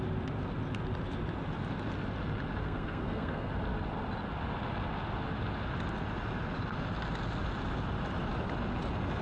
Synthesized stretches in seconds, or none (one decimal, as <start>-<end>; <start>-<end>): 2.6-3.5